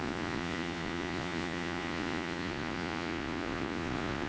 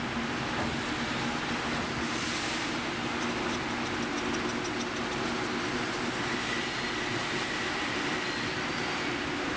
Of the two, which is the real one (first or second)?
second